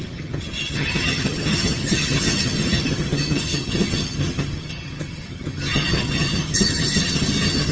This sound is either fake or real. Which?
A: fake